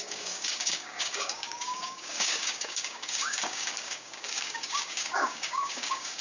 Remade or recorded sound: remade